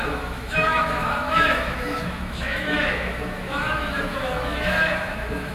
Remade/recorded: remade